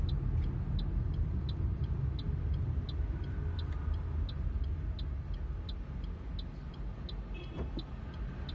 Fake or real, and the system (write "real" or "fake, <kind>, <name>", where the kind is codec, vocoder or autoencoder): real